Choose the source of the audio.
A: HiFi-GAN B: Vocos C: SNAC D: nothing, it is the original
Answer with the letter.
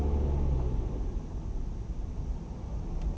D